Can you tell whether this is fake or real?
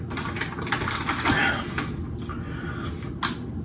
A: real